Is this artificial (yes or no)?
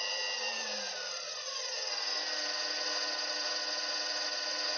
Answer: no